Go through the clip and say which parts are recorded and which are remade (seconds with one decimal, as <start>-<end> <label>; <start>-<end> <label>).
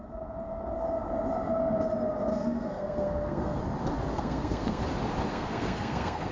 0.0-2.3 recorded; 2.3-3.6 remade; 3.6-4.1 recorded; 4.1-4.8 remade; 4.8-5.3 recorded; 5.3-6.3 remade